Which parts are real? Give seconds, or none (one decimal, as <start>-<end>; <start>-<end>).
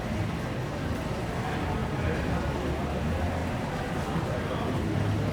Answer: 0.0-1.8; 2.6-5.3